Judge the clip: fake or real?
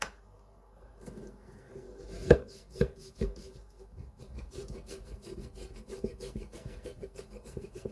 fake